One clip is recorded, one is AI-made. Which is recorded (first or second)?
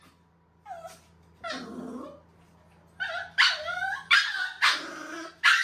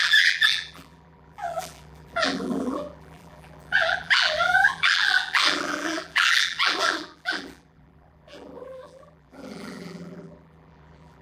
first